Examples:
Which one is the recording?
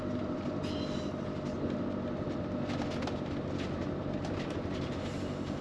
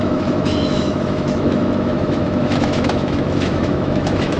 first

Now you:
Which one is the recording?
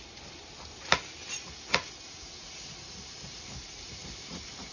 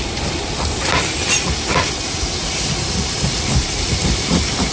first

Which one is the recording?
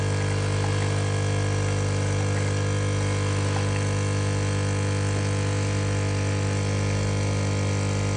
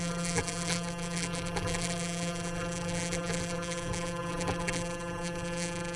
first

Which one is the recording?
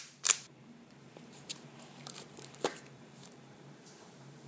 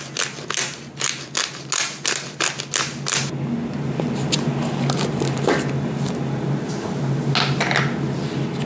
second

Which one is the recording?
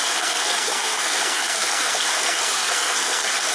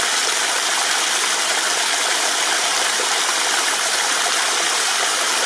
second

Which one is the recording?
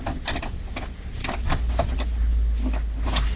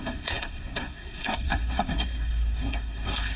first